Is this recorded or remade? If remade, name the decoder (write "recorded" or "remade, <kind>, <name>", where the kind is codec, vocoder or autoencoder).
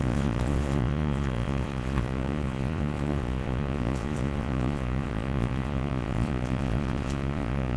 remade, vocoder, Vocos